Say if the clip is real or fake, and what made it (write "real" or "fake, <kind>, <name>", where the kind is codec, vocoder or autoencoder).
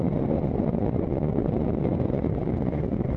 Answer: fake, vocoder, Vocos